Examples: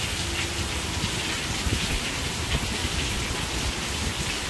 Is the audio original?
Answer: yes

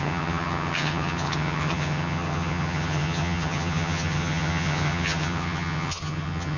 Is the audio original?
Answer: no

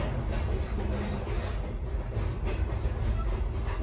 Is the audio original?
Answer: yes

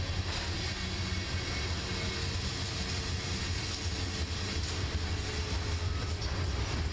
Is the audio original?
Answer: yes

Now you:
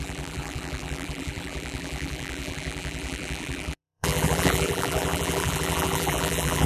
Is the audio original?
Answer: no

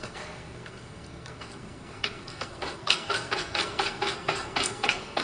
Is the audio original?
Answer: no